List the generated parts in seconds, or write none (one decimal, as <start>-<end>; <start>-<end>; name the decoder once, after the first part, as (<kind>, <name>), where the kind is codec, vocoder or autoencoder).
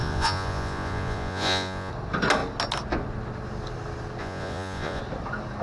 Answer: 0.0-1.9 (vocoder, Vocos); 4.2-5.0